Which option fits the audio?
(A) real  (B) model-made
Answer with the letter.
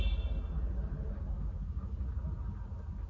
A